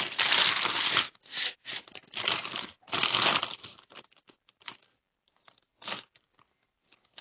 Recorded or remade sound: recorded